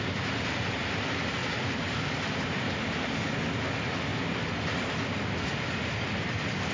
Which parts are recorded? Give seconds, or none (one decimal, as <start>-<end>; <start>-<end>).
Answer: 0.0-6.7